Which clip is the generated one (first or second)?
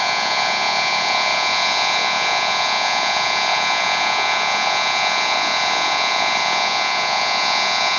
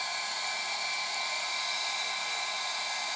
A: first